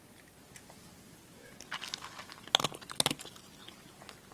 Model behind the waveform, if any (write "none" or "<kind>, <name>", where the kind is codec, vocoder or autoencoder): none